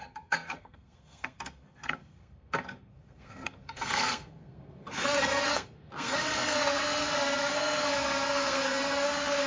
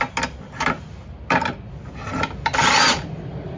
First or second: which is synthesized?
first